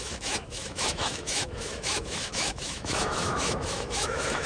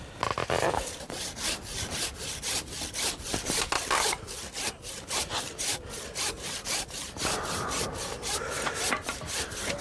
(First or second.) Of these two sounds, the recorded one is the second